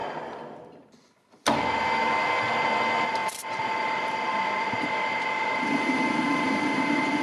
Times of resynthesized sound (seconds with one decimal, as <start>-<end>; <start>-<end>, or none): 3.2-6.8